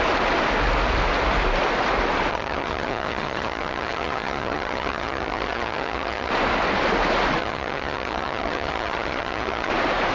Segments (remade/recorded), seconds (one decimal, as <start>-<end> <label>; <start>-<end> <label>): 0.0-2.3 recorded; 2.3-6.3 remade; 6.3-7.4 recorded; 7.4-9.7 remade; 9.7-10.1 recorded